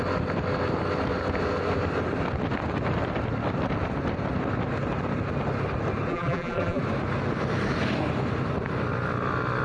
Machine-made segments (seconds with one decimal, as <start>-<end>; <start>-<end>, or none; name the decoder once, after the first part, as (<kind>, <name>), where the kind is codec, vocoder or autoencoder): 6.1-6.8 (vocoder, BigVGAN v2)

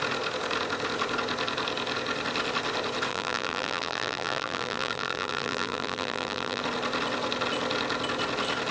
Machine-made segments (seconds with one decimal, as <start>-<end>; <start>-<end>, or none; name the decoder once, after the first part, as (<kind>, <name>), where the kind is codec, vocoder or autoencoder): 3.1-6.6 (vocoder, BigVGAN v2)

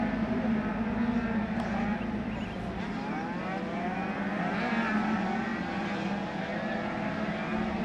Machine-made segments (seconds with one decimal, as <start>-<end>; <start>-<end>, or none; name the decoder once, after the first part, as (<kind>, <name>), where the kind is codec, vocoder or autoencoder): none

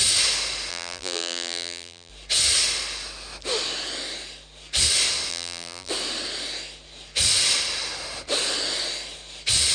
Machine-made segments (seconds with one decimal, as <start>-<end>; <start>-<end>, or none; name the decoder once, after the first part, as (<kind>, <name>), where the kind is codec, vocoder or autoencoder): 0.7-2.1 (vocoder, BigVGAN v2); 5.3-5.9

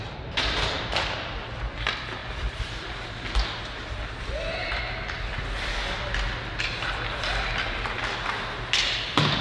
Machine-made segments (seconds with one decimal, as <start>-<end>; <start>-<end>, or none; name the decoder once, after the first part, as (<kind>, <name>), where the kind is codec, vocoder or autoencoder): 2.2-2.9 (vocoder, BigVGAN v2)